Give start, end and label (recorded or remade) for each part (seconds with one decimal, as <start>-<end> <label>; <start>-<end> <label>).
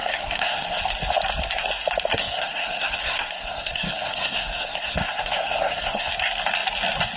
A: 0.0-0.8 remade; 0.8-2.2 recorded; 2.2-6.1 remade; 6.1-7.2 recorded